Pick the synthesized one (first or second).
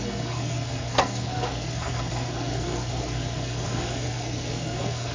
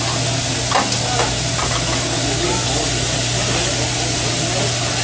first